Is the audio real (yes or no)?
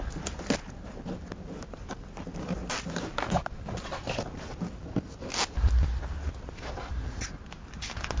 yes